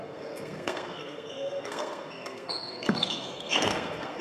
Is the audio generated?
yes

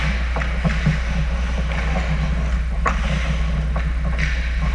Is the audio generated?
no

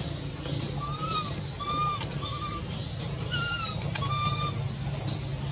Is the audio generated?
no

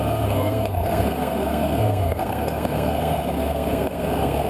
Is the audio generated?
yes